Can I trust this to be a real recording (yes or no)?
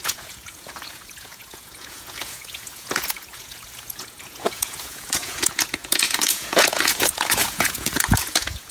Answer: no